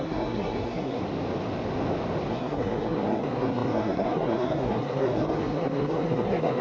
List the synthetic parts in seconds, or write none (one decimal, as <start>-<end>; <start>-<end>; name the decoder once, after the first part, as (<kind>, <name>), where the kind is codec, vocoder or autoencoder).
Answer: 0.0-1.0 (codec, SNAC); 2.3-6.6